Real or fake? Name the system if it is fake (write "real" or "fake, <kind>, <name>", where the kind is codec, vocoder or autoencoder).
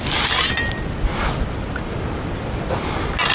real